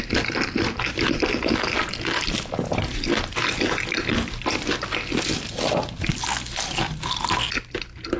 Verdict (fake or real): real